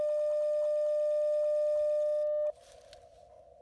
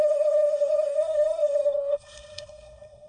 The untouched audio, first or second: first